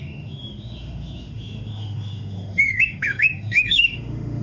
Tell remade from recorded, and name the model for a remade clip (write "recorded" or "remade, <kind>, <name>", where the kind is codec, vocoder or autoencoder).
remade, autoencoder, DAC-VAE